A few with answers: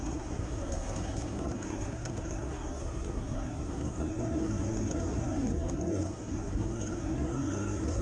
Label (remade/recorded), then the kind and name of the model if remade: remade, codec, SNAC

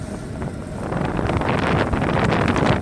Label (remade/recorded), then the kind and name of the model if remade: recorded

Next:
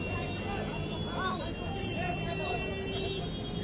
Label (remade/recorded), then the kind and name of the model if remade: recorded